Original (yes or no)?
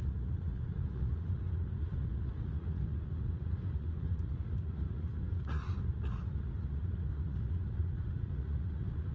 no